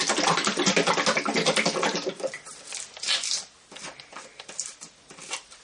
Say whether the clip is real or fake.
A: real